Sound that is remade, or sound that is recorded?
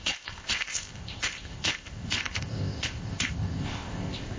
remade